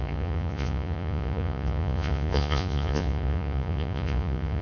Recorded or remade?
remade